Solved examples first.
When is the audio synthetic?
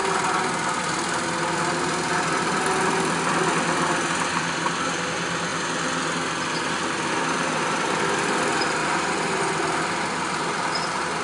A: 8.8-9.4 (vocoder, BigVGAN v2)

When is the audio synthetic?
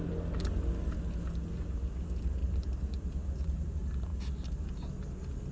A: 2.4-3.1 (vocoder, BigVGAN v2)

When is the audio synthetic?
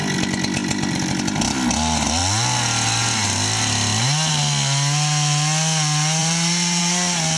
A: 0.6-1.2 (vocoder, BigVGAN v2); 6.2-6.8